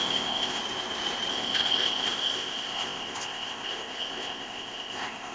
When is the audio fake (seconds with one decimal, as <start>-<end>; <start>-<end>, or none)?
0.0-0.6; 1.3-5.3